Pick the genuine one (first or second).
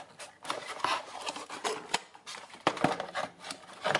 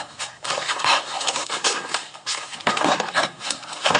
first